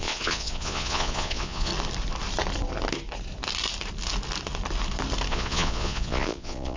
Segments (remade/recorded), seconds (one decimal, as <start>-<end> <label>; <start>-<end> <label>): 0.0-1.7 remade; 1.7-5.3 recorded; 5.3-6.8 remade